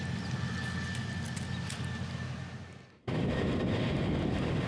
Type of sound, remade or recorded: recorded